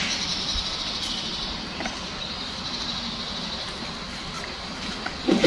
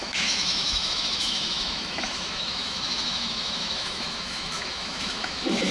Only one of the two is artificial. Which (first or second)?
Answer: second